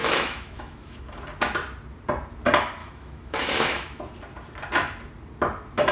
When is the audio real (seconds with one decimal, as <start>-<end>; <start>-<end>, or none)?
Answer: 1.0-2.8; 4.0-5.9